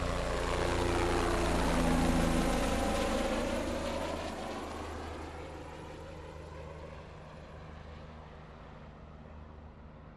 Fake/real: real